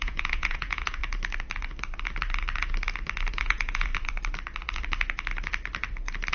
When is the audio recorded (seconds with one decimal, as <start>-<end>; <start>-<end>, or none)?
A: 1.0-3.3; 3.9-6.3